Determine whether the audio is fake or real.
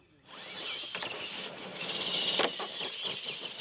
real